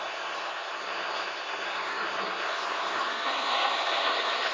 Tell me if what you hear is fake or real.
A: fake